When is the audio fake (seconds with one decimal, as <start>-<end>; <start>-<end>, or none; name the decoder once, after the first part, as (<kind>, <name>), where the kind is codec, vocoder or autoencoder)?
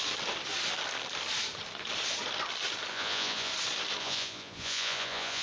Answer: 2.9-3.5 (vocoder, Vocos); 4.0-5.4